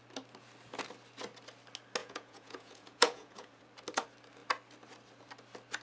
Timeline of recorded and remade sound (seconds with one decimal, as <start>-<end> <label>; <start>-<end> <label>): 0.0-2.0 recorded; 2.0-3.6 remade; 3.6-5.8 recorded